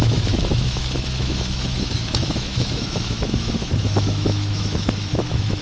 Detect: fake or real fake